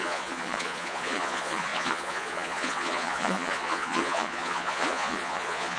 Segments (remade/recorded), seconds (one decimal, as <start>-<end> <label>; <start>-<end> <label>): 0.0-5.8 remade